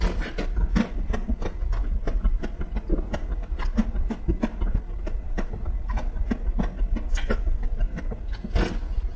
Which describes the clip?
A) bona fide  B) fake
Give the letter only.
A